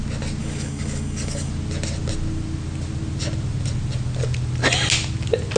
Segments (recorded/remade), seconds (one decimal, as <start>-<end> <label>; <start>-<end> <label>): 0.0-0.4 recorded; 0.4-1.5 remade; 1.5-5.6 recorded